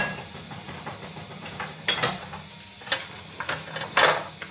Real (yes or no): yes